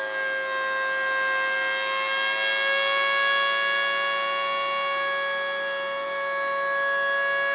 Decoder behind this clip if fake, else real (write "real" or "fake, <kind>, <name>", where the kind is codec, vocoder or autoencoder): real